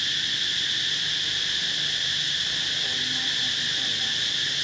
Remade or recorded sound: recorded